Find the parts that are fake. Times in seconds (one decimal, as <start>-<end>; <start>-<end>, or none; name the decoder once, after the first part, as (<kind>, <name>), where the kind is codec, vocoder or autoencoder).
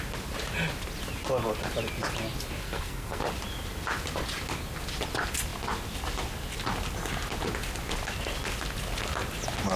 2.6-3.2 (codec, SNAC)